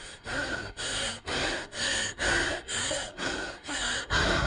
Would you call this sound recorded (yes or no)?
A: no